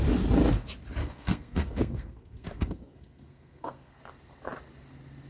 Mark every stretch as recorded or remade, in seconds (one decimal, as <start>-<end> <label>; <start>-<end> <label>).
0.0-1.0 recorded; 1.0-4.0 remade; 4.0-5.3 recorded